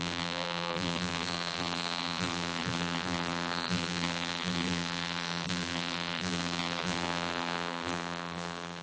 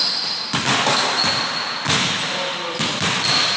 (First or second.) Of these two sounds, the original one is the second